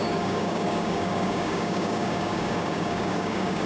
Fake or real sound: fake